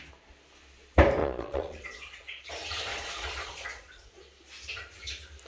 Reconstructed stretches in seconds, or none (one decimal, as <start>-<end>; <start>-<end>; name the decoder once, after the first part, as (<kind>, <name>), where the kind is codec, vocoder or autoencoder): 1.2-2.5 (vocoder, Vocos); 2.9-4.1